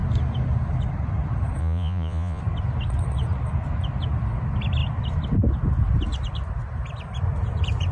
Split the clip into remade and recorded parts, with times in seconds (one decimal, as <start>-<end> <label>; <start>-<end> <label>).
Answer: 0.0-1.6 recorded; 1.6-2.4 remade; 2.4-7.9 recorded